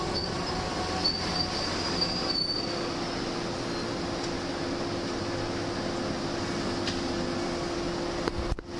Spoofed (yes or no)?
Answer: no